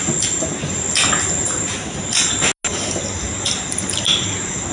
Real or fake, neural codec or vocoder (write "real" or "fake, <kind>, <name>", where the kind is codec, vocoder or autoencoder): real